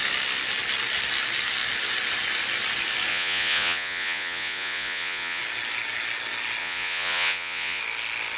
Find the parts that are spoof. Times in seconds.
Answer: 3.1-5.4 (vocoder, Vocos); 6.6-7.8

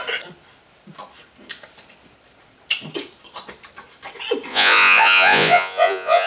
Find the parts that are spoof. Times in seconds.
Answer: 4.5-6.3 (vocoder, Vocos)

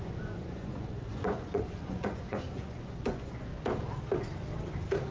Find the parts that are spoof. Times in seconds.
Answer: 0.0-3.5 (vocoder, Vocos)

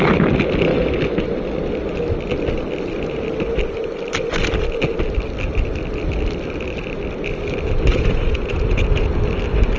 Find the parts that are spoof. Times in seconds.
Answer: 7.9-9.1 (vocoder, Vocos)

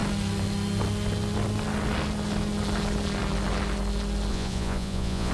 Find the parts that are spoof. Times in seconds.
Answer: 4.3-5.3 (vocoder, Vocos)

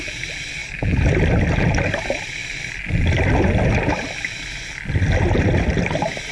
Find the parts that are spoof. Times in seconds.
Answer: none

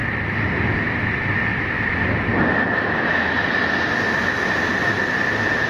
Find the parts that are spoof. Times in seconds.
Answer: none

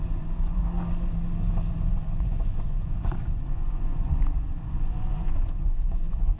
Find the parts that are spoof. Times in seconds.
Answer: 0.0-0.6 (vocoder, Vocos); 1.9-6.4